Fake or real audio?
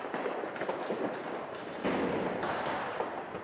real